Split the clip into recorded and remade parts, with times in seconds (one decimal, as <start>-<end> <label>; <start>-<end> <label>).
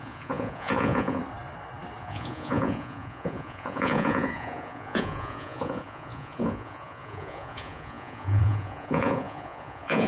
0.0-1.2 remade; 1.2-2.0 recorded; 2.0-10.1 remade